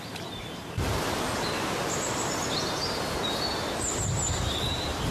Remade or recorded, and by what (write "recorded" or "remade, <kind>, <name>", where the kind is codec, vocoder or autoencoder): remade, vocoder, BigVGAN v2